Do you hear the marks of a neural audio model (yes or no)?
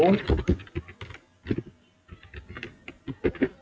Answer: no